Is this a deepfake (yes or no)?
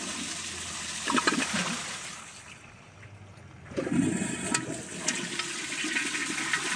no